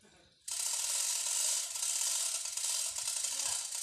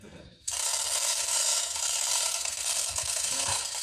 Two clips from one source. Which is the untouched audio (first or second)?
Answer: first